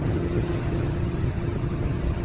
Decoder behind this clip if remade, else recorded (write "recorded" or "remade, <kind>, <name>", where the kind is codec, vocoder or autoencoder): remade, vocoder, HiFi-GAN